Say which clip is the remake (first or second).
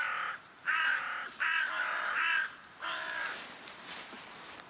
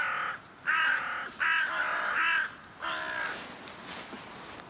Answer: first